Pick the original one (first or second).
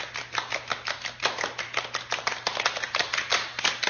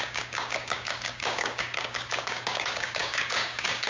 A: first